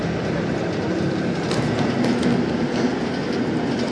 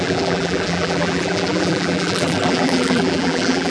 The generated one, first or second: second